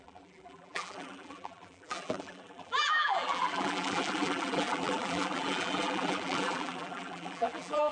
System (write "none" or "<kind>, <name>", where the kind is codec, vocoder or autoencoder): vocoder, BigVGAN v2